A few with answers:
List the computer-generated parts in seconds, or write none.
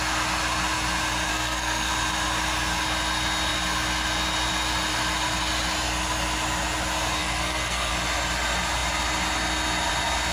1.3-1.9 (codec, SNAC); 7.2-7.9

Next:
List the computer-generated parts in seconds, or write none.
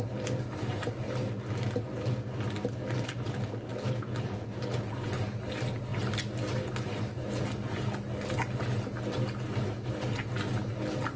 3.7-4.6 (vocoder, BigVGAN v2)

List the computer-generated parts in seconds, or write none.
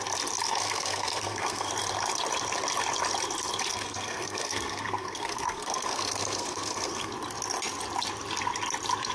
0.5-1.7 (codec, SNAC); 3.7-7.1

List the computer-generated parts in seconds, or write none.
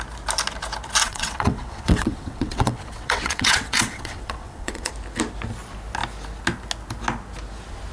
1.0-4.9 (vocoder, WaveNeXt)